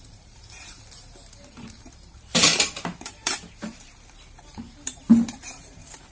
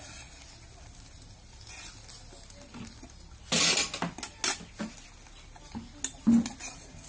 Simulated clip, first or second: first